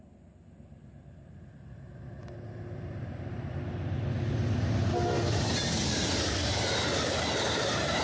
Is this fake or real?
real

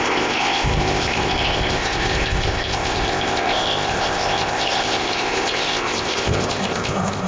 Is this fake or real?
fake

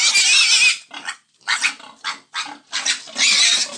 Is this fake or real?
real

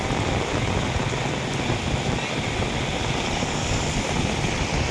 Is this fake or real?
real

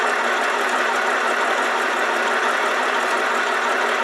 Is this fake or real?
fake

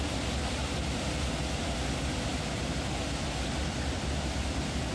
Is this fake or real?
fake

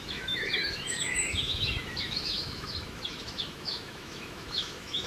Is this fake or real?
fake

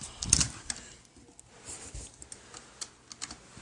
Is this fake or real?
real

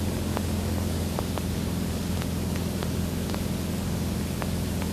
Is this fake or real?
fake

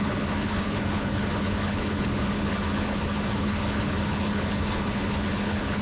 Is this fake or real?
fake